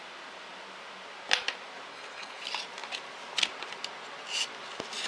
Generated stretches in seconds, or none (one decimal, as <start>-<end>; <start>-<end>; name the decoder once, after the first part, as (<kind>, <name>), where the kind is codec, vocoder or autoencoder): 1.9-2.4 (codec, HILCodec)